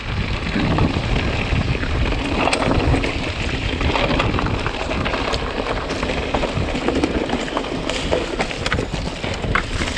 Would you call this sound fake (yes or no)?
no